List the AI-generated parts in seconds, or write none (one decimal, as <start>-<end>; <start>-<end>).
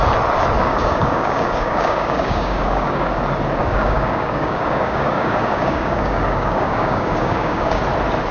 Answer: 0.6-3.1; 3.6-7.8